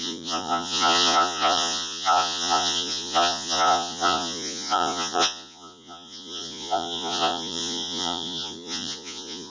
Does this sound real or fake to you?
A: fake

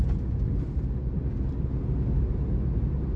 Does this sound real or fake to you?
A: real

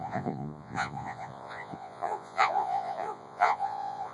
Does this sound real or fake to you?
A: fake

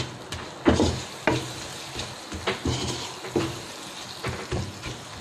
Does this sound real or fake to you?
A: real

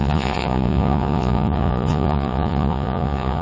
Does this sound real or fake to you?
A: fake